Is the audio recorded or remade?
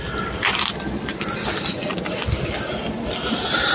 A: recorded